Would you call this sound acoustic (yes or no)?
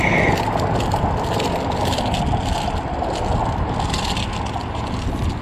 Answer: yes